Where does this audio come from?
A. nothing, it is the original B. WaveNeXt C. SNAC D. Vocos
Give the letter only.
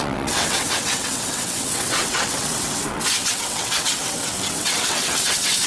B